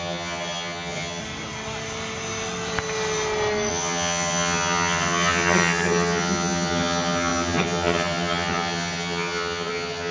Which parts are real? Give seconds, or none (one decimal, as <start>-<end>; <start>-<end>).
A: 1.2-3.7